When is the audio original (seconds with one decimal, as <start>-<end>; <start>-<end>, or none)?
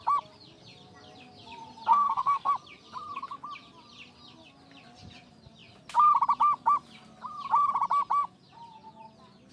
0.0-1.9; 2.5-9.5